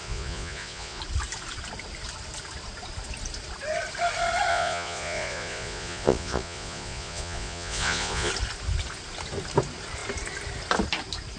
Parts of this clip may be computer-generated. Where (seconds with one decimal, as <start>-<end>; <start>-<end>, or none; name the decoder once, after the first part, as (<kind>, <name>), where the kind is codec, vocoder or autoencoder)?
0.0-1.0 (vocoder, Vocos); 4.5-8.3